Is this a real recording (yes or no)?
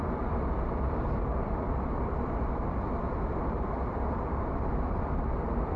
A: no